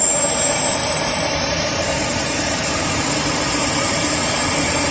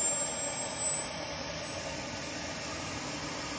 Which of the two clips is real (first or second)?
second